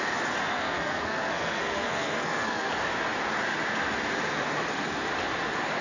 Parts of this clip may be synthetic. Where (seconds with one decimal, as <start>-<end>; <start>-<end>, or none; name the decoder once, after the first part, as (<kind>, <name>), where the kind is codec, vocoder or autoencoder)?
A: 0.5-2.7 (codec, SNAC)